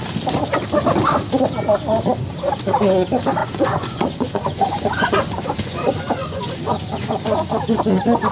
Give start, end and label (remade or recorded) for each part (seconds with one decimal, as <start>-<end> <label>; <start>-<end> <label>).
0.0-3.4 recorded; 3.4-7.5 remade; 7.5-8.3 recorded